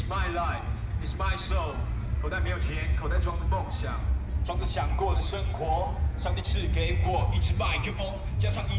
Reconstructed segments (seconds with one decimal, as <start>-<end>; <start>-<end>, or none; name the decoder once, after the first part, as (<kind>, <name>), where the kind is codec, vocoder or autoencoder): 2.6-3.7 (vocoder, Vocos); 5.1-6.4; 7.0-8.0